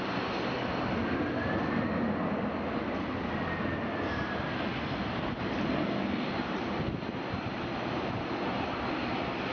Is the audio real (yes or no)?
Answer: yes